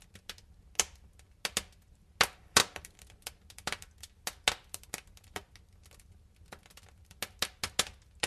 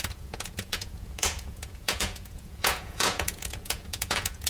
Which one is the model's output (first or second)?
second